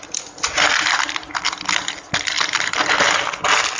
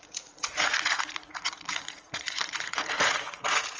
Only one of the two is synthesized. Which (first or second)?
second